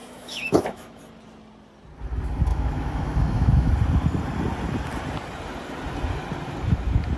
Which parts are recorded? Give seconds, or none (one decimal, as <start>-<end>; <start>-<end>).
1.0-2.5; 3.7-7.2

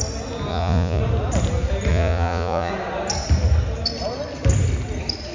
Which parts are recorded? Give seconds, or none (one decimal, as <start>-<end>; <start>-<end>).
0.0-0.5; 1.0-1.9; 2.7-5.3

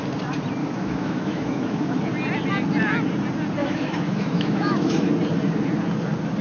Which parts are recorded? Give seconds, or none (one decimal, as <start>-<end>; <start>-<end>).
0.0-0.6; 2.0-3.6; 5.1-6.4

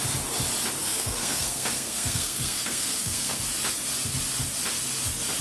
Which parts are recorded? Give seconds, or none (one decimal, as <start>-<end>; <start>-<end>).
0.0-0.8; 3.4-5.4

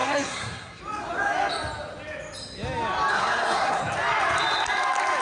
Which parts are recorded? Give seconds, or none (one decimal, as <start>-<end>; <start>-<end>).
0.8-3.1; 3.8-5.2

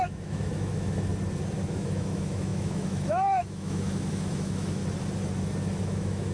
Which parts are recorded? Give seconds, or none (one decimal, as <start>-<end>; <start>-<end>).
1.1-1.7; 4.8-5.8